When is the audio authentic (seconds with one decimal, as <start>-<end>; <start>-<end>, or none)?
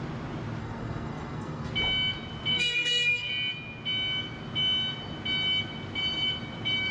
0.0-0.6; 1.7-2.5; 3.3-6.9